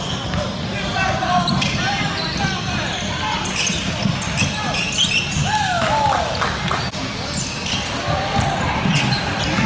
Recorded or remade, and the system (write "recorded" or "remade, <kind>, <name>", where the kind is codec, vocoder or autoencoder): recorded